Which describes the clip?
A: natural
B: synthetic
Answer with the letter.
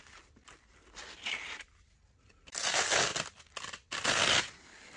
A